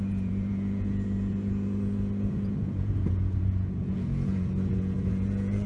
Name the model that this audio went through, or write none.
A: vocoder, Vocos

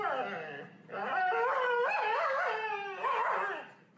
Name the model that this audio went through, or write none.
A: none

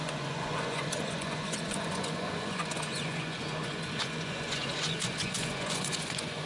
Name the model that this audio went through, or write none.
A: vocoder, Vocos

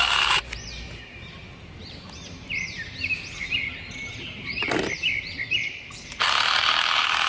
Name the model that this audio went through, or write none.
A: none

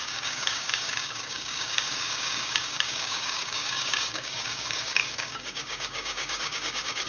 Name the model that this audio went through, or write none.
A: codec, DAC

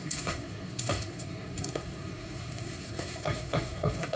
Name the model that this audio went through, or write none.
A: codec, SNAC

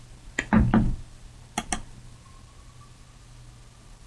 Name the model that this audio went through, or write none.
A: none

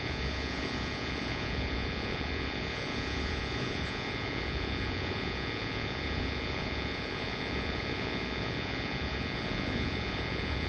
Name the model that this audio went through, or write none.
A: vocoder, Vocos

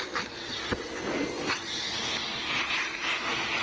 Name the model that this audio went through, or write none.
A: none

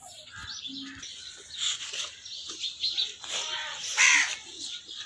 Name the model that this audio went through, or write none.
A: none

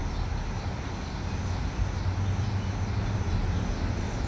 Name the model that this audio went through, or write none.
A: none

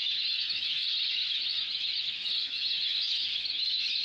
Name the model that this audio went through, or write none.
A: autoencoder, DAC-VAE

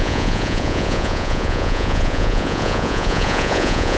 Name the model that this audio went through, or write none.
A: vocoder, Vocos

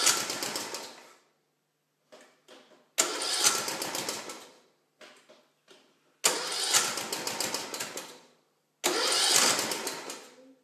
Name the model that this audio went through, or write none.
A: none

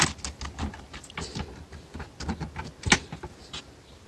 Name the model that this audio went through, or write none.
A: none